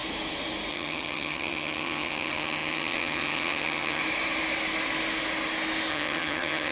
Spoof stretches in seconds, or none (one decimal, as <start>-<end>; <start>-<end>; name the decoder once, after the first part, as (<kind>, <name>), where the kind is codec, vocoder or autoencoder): 0.7-4.0 (vocoder, HiFi-GAN); 5.9-6.7